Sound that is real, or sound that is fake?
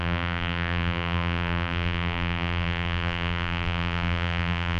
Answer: fake